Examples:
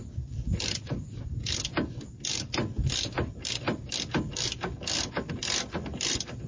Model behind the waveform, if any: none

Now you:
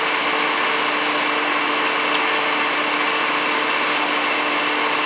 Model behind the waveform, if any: none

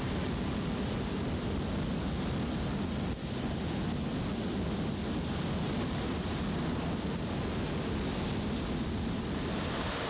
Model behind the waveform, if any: none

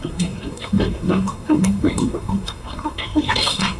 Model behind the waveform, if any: codec, SNAC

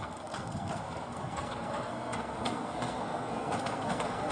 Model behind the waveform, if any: codec, SNAC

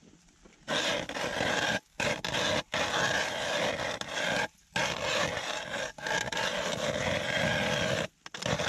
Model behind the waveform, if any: none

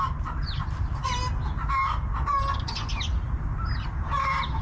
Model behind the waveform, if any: none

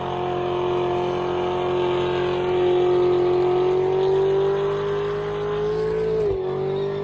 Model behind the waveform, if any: none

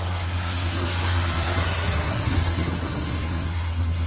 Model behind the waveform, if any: codec, SNAC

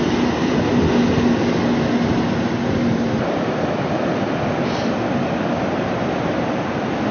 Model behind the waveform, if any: none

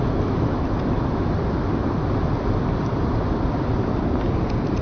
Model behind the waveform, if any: none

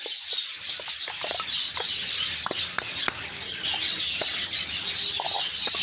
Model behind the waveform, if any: none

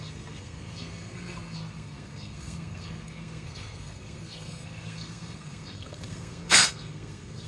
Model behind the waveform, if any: codec, SNAC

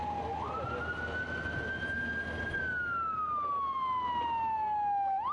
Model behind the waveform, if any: none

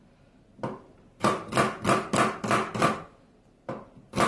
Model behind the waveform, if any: none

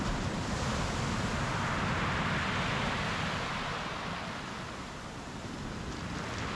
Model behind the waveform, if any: none